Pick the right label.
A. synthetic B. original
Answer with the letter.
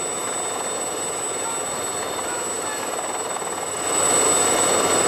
B